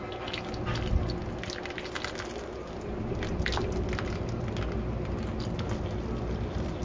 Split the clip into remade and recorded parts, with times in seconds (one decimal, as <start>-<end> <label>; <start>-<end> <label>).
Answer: 0.0-6.8 recorded